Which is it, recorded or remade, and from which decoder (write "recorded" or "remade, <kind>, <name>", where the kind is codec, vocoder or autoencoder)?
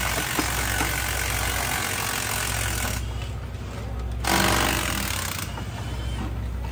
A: recorded